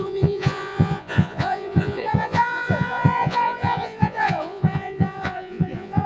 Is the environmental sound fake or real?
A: fake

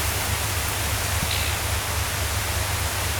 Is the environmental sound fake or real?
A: real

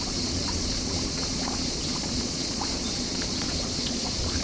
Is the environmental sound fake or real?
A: fake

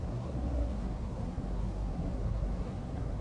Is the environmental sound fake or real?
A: fake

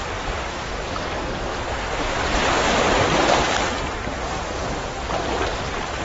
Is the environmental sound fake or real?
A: fake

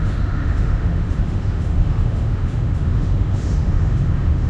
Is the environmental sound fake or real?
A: fake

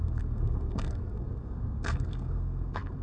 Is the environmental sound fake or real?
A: fake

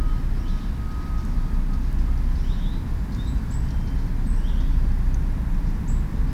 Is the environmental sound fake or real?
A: real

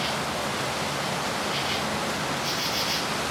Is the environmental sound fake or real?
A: real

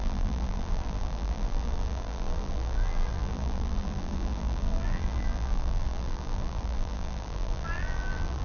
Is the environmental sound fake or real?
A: fake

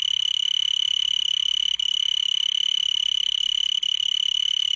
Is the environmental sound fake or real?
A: real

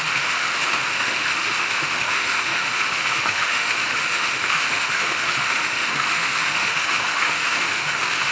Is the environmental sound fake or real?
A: fake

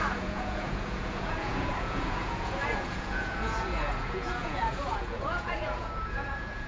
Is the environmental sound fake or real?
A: fake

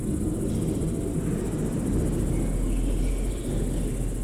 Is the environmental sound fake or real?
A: real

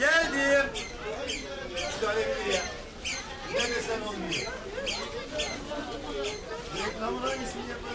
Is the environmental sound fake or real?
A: real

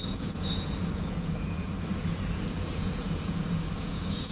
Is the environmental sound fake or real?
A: fake